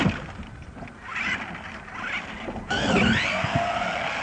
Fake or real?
real